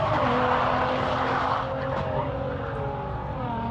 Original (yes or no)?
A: yes